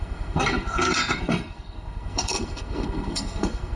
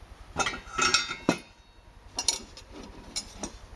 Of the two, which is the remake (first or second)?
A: first